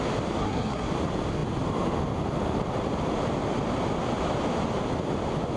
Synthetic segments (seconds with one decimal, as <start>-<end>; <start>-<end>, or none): 0.4-0.9